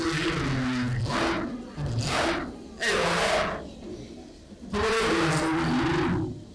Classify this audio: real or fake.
real